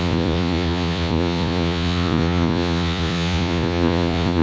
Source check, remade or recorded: remade